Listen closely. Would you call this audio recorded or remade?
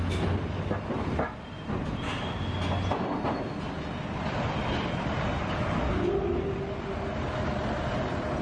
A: recorded